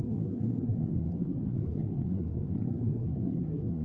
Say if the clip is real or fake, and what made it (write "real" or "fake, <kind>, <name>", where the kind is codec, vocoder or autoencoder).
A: fake, codec, SNAC